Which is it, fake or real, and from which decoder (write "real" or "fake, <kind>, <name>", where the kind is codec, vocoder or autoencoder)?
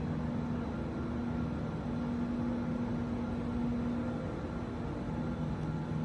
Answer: real